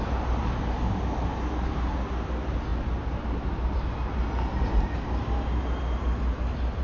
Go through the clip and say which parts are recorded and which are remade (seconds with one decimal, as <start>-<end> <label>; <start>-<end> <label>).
0.0-6.8 recorded